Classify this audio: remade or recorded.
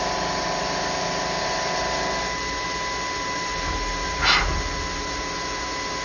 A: recorded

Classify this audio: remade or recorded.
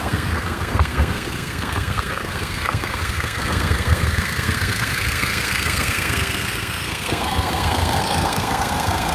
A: remade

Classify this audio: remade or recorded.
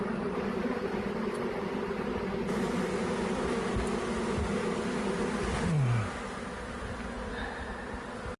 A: recorded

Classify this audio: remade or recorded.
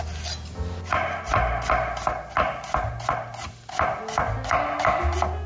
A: recorded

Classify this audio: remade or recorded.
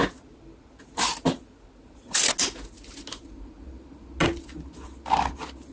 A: recorded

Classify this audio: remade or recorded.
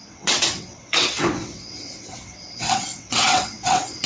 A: remade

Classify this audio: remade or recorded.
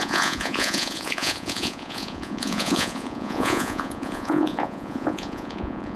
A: remade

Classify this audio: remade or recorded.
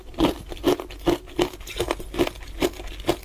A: recorded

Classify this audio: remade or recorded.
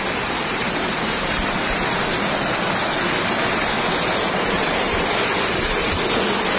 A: recorded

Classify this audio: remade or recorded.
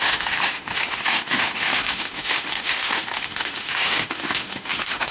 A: remade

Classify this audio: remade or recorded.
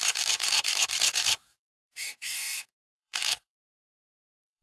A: remade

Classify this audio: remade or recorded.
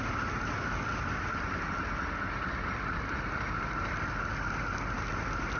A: recorded